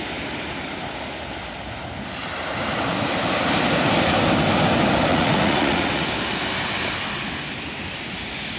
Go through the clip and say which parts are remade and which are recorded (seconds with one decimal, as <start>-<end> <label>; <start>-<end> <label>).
0.0-5.1 recorded; 5.1-6.1 remade; 6.1-8.6 recorded